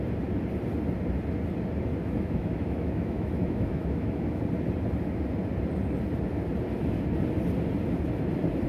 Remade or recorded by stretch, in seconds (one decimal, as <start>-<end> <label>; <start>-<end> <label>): 0.0-2.0 recorded; 2.0-4.4 remade; 4.4-8.7 recorded